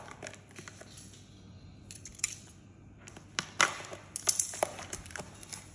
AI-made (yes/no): no